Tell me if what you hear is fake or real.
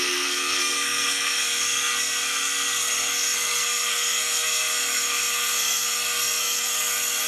fake